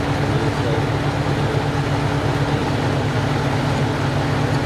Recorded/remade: recorded